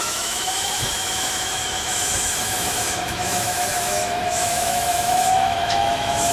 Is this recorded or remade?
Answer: remade